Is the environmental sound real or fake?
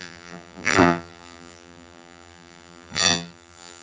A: fake